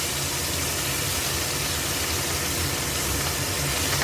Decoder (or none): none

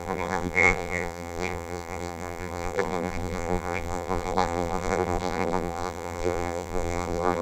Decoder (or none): vocoder, BigVGAN v2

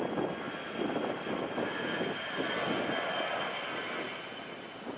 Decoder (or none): none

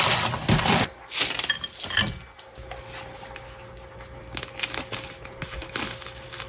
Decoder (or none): none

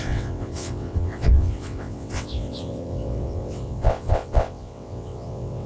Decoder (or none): vocoder, WaveNeXt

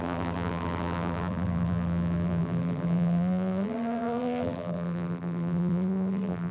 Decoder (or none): vocoder, BigVGAN v2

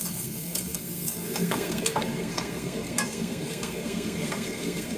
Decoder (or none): codec, SNAC